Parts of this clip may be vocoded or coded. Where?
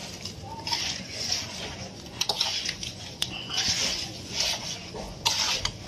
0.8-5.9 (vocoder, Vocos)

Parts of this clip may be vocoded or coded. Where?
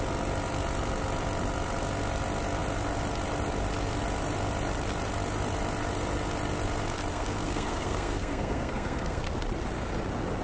7.1-9.3 (codec, SNAC)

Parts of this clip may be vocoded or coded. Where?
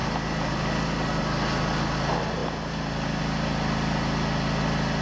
none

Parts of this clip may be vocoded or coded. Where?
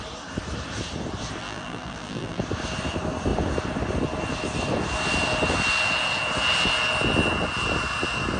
1.4-2.4 (vocoder, BigVGAN v2)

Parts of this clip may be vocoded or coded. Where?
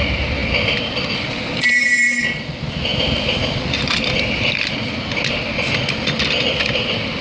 none